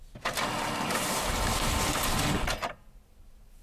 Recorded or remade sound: recorded